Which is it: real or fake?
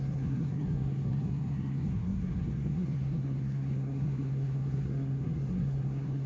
fake